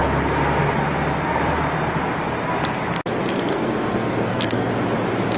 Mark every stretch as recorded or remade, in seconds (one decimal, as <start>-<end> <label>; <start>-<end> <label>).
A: 0.0-3.5 recorded; 3.5-4.7 remade; 4.7-5.4 recorded